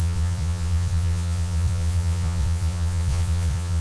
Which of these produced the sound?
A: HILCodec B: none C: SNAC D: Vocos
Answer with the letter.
D